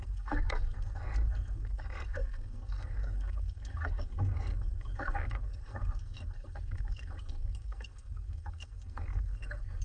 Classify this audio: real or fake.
fake